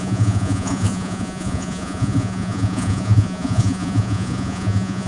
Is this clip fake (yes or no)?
yes